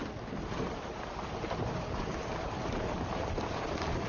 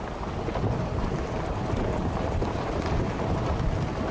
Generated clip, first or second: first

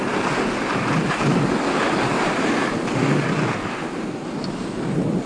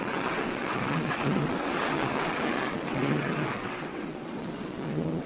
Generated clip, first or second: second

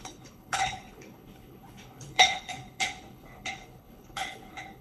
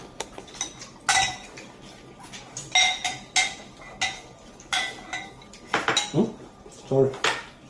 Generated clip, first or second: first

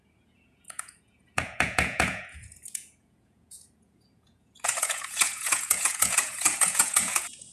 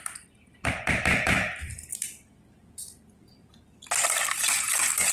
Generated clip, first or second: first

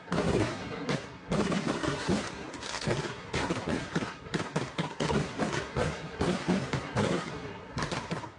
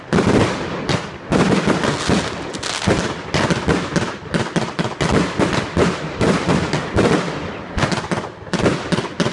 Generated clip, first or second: first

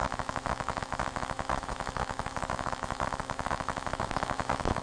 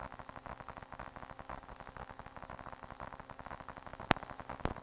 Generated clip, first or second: first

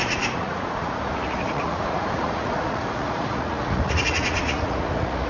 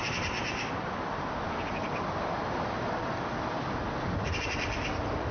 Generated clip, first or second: first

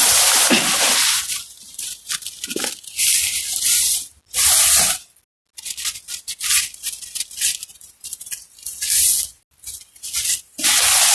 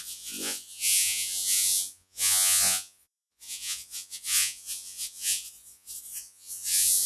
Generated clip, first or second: second